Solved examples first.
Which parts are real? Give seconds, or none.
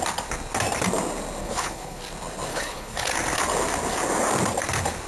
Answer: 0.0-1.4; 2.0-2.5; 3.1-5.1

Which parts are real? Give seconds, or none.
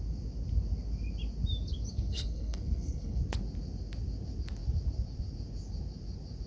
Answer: 0.0-1.9; 3.2-6.5